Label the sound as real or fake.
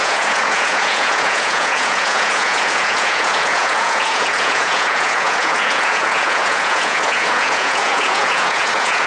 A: fake